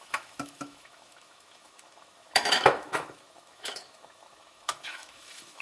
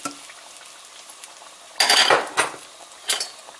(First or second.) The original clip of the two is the second